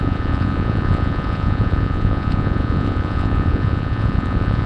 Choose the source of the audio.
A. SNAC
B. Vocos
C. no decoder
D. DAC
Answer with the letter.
B